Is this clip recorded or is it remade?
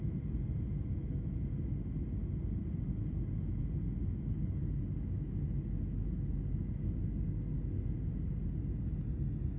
recorded